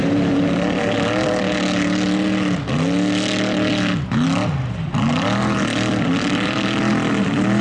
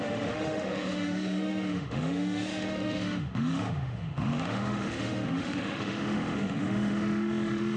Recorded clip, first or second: first